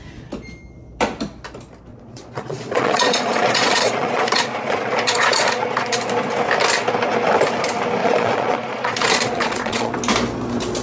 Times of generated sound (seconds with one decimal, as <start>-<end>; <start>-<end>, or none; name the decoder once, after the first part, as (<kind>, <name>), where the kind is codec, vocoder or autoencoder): 1.9-6.0 (vocoder, Vocos); 8.0-9.9